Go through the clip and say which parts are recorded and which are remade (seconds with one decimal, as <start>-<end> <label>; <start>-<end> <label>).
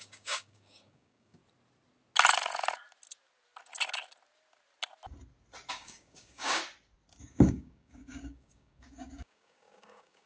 0.0-1.4 remade; 1.4-5.7 recorded; 5.7-6.6 remade; 6.6-7.2 recorded; 7.2-10.3 remade